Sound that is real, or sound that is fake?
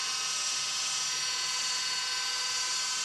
real